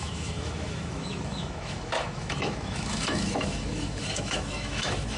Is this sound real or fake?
fake